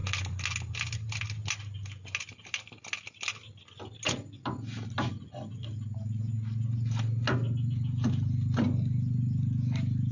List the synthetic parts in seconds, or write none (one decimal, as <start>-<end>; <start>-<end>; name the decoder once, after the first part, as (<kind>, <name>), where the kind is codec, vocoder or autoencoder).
none